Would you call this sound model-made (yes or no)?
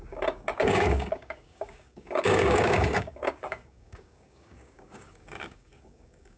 yes